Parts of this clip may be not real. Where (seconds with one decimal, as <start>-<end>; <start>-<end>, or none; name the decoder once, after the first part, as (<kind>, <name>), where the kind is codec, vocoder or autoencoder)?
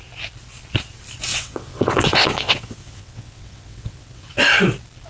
1.3-4.4 (vocoder, WaveNeXt)